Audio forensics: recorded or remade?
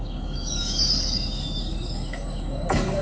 remade